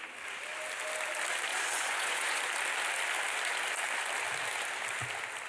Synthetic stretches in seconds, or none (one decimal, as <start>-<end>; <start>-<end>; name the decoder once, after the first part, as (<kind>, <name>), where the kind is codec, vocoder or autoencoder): 1.5-2.4 (vocoder, Vocos)